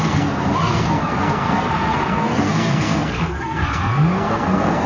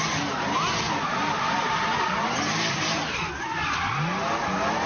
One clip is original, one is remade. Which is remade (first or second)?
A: first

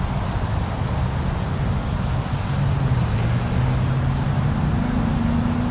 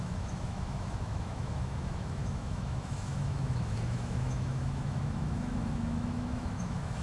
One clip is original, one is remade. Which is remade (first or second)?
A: second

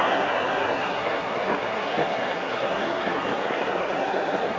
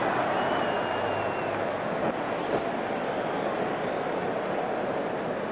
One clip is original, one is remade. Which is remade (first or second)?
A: first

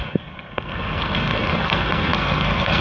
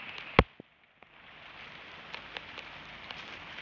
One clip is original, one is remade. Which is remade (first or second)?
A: first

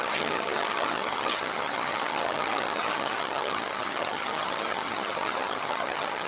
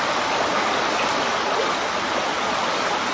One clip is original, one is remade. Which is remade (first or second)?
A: first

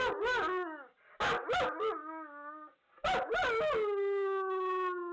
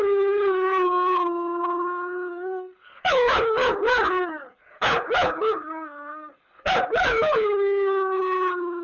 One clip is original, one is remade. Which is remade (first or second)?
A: second